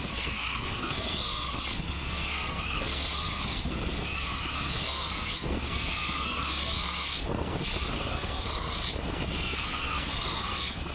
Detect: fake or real fake